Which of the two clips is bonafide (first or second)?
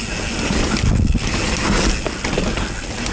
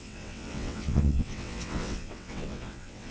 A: first